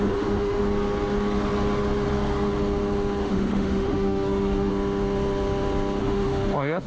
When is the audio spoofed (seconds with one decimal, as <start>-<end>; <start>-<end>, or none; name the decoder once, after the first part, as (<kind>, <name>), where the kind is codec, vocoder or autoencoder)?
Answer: 0.0-0.6 (autoencoder, DAC-VAE); 3.2-4.7; 6.0-6.9